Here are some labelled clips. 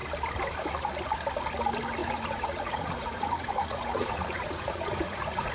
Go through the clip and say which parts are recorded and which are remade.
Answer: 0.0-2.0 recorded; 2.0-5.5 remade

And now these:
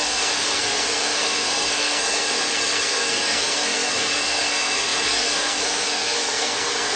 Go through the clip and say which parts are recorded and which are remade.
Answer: 0.0-7.0 remade

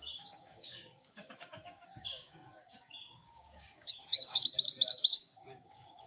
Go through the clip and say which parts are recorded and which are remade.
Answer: 0.0-4.4 remade; 4.4-5.1 recorded; 5.1-6.1 remade

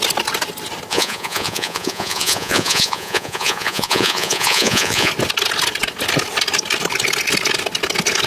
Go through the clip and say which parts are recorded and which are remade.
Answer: 0.0-0.9 recorded; 0.9-5.1 remade; 5.1-8.3 recorded